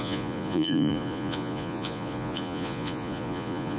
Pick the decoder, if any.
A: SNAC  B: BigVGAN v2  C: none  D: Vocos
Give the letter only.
D